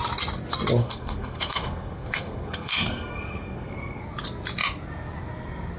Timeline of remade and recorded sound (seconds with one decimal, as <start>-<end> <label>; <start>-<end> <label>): 0.0-0.8 recorded; 0.8-4.0 remade; 4.0-5.8 recorded